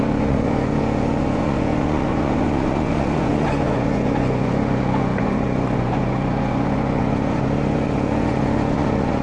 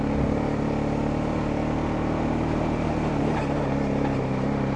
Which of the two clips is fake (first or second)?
first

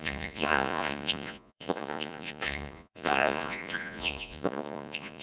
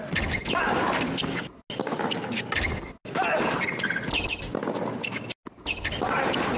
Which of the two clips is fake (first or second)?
first